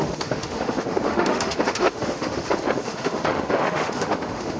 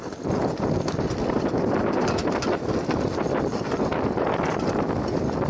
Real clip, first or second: second